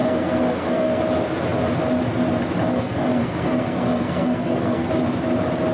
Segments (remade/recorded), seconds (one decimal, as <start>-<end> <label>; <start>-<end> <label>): 0.0-1.0 remade; 1.0-2.7 recorded; 2.7-4.9 remade; 4.9-5.7 recorded